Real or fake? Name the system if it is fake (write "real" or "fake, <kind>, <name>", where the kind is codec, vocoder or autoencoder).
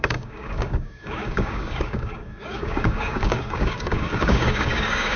fake, codec, DAC